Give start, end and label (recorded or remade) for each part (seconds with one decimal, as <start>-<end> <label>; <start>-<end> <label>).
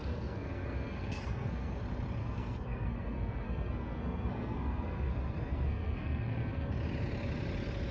0.0-1.8 remade; 1.8-2.2 recorded; 2.2-6.7 remade; 6.7-7.9 recorded